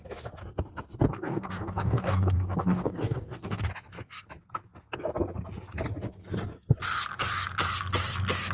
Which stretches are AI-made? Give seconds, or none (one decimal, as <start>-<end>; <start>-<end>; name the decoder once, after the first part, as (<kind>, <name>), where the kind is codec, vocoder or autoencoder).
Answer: 1.1-3.7 (codec, DAC)

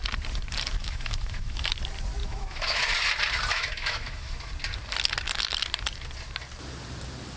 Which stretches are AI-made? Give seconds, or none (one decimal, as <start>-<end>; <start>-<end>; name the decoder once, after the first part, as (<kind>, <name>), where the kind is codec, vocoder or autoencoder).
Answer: 0.8-1.7 (autoencoder, DAC-VAE); 2.2-2.8; 3.5-4.5

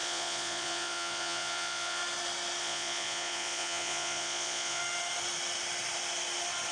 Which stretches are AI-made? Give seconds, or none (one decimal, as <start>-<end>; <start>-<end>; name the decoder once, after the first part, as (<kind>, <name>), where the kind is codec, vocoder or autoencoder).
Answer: 0.0-2.0 (vocoder, Vocos); 2.6-4.8